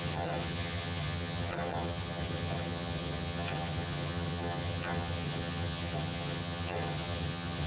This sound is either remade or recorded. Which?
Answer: remade